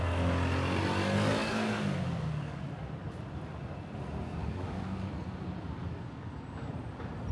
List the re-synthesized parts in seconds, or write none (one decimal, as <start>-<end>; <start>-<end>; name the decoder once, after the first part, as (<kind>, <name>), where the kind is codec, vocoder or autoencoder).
1.4-2.6 (codec, DAC); 4.4-5.1; 5.8-6.7